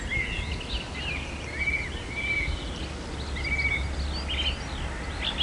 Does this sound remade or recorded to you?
recorded